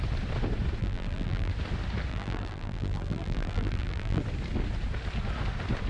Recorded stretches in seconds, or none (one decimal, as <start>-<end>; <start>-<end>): 0.0-0.8; 1.5-2.1; 4.2-5.9